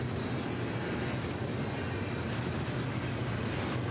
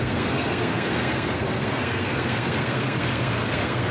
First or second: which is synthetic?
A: second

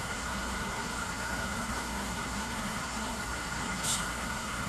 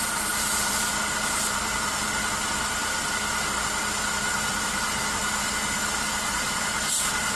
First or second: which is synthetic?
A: first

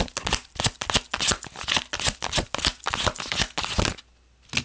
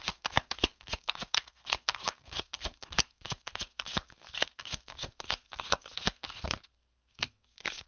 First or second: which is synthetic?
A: second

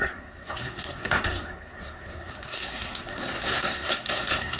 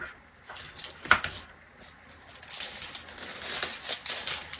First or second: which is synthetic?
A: first